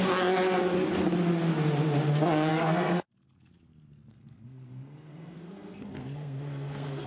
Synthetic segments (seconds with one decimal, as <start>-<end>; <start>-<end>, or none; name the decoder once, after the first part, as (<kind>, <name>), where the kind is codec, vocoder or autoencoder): 2.5-3.1 (codec, SNAC); 4.1-7.1